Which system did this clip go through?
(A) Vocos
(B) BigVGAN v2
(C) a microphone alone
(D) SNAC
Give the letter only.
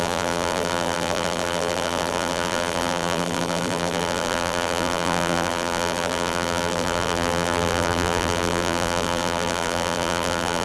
B